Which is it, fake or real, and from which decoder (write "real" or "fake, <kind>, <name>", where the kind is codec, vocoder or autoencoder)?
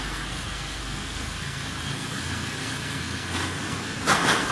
fake, codec, SNAC